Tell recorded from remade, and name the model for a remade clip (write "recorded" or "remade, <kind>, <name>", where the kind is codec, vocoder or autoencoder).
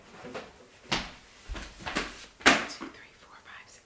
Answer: recorded